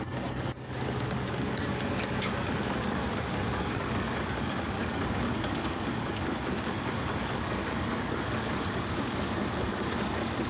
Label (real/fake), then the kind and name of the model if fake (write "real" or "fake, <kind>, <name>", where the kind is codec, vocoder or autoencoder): fake, codec, DAC